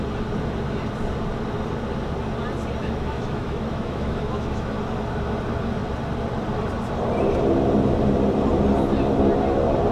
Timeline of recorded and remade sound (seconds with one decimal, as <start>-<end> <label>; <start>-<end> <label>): 0.0-2.8 recorded; 2.8-4.7 remade; 4.7-9.9 recorded